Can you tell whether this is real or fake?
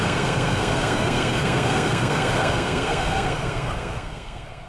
fake